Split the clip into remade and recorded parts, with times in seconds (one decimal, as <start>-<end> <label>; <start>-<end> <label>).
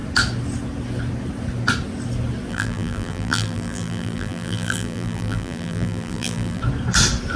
0.0-2.5 recorded; 2.5-6.6 remade; 6.6-7.4 recorded